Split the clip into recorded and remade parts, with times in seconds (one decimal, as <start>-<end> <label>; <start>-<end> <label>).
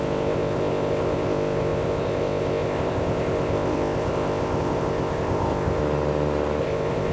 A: 0.0-5.8 remade; 5.8-6.6 recorded; 6.6-7.1 remade